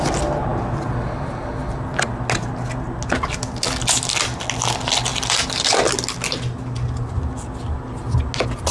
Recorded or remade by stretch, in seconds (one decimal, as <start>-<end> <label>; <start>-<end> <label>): 0.0-5.1 recorded; 5.1-5.6 remade; 5.6-8.7 recorded